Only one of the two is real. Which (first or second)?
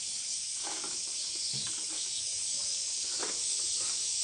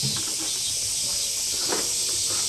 second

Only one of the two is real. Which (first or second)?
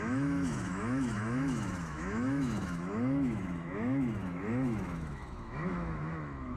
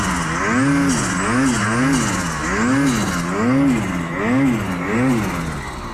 second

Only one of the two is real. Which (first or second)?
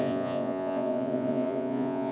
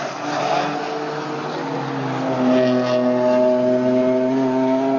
second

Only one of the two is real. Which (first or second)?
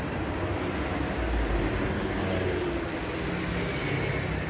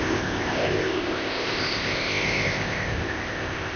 first